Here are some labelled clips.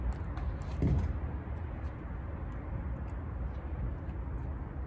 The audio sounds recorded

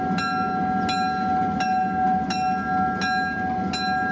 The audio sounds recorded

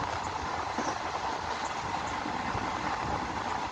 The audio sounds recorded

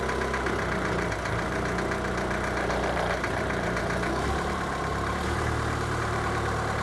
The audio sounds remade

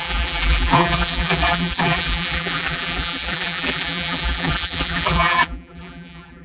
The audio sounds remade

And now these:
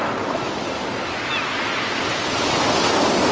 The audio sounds recorded